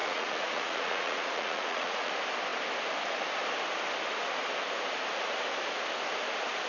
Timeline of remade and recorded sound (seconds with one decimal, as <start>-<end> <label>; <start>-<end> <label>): 0.0-2.1 remade; 2.1-6.7 recorded